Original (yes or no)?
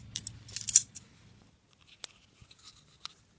yes